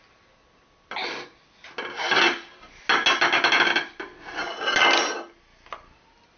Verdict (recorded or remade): recorded